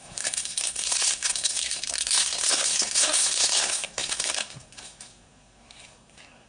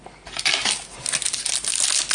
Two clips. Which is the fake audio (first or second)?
first